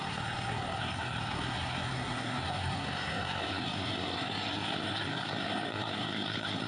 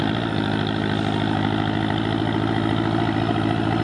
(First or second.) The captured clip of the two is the second